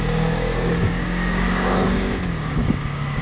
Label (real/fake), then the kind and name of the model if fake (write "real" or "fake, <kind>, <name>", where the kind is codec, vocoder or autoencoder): fake, codec, DAC